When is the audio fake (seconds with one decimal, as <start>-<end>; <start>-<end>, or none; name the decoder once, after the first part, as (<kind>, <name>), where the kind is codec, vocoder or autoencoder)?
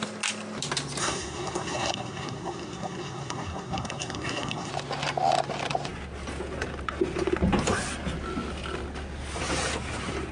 1.0-4.7 (codec, SNAC)